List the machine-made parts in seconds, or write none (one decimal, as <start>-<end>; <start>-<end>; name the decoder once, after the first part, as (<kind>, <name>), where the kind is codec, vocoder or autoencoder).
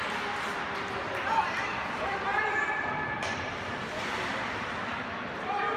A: none